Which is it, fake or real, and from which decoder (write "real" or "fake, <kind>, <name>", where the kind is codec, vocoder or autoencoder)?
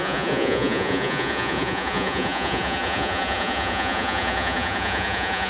fake, vocoder, Vocos